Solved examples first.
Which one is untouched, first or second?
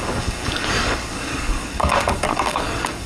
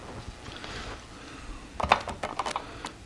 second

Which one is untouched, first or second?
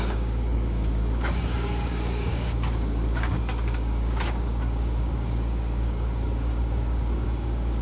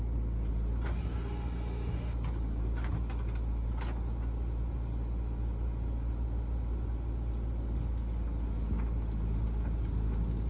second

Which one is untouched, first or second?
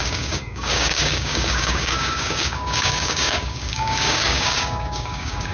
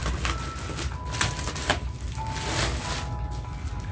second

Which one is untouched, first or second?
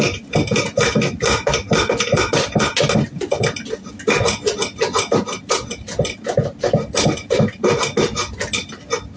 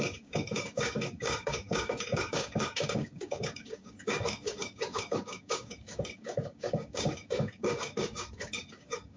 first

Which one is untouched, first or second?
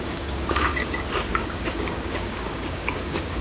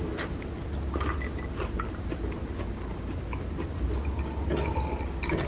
second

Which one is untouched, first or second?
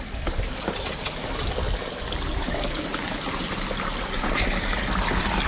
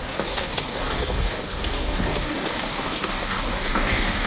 first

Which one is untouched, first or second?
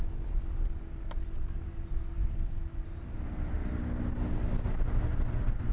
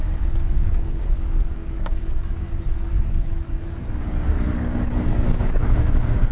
first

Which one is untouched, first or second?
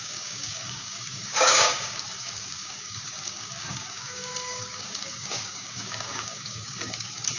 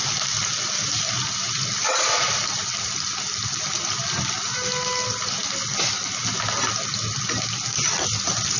second